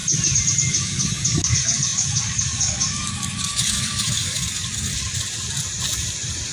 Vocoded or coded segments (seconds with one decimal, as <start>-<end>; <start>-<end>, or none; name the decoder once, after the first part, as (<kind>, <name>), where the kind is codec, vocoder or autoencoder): 0.7-4.9 (codec, DAC)